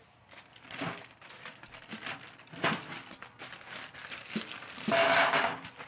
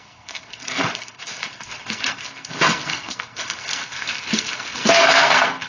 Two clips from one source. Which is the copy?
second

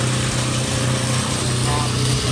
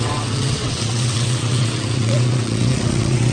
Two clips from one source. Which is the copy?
second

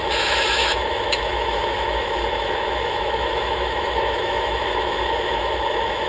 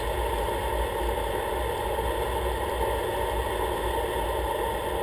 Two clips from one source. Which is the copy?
first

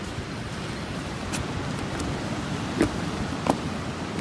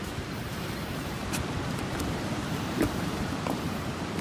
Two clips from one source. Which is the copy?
second